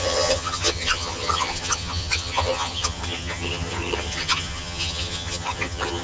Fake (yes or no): yes